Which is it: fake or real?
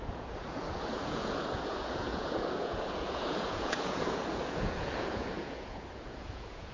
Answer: fake